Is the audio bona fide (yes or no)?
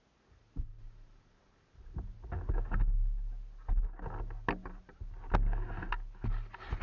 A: yes